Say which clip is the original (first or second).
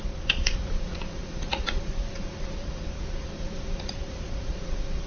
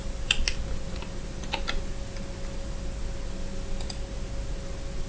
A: second